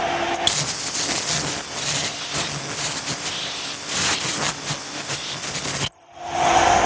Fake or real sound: real